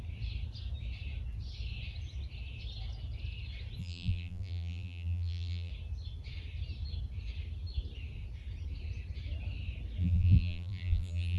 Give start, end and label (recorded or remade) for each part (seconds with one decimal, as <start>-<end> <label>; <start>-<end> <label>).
0.0-3.8 recorded; 3.8-5.7 remade; 5.7-10.0 recorded; 10.0-11.4 remade